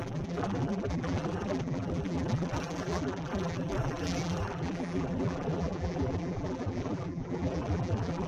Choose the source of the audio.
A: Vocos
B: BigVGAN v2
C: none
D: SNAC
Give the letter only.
B